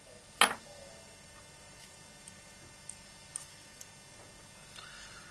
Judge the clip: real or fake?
real